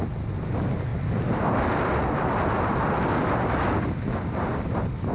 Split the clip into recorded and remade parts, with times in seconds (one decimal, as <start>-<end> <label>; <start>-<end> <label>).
0.0-5.1 recorded